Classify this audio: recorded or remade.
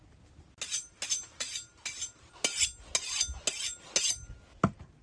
recorded